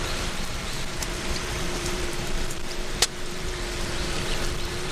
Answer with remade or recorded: remade